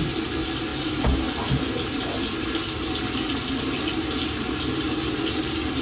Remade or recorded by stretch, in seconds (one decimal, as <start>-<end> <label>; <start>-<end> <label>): 0.0-5.8 recorded